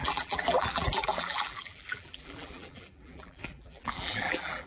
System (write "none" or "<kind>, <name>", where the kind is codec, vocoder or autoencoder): vocoder, BigVGAN v2